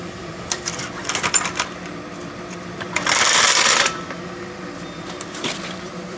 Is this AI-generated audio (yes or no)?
yes